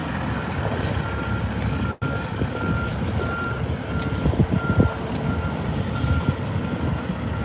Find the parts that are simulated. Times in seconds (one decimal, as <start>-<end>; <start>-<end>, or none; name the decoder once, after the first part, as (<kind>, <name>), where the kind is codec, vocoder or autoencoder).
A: 1.7-2.9 (codec, DAC)